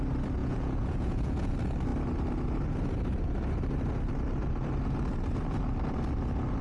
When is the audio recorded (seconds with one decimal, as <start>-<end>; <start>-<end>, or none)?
0.0-0.4; 1.5-6.6